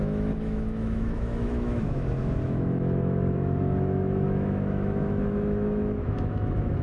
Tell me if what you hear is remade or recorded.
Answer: remade